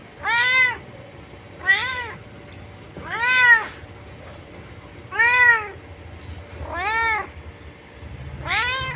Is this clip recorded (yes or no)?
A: yes